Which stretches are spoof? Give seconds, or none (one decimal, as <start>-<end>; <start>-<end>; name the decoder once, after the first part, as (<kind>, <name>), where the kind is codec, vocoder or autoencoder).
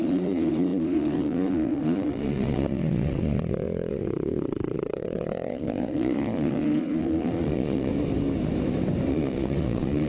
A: 0.0-7.9 (vocoder, Vocos); 9.1-10.1